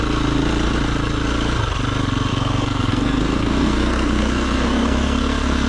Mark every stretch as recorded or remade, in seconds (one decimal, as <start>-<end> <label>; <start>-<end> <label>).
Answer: 0.0-2.3 recorded; 2.3-5.7 remade